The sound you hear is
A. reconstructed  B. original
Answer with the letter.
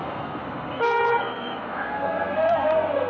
A